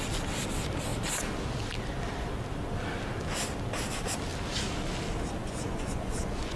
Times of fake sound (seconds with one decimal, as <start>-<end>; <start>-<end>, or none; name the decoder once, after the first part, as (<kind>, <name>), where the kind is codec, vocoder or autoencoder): 5.4-6.6 (vocoder, Vocos)